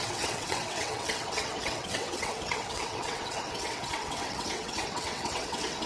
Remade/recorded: remade